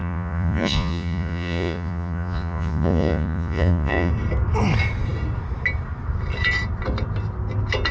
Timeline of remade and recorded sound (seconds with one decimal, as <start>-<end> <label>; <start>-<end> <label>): 0.0-4.1 remade; 4.1-7.9 recorded